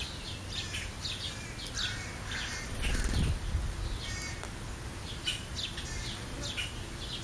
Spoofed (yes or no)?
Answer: no